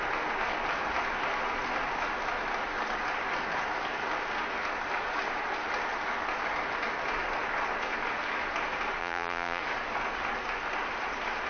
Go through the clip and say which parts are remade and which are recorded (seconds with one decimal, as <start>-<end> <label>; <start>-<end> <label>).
0.0-9.0 recorded; 9.0-9.6 remade; 9.6-11.5 recorded